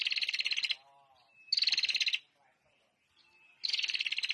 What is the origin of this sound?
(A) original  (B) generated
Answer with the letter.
A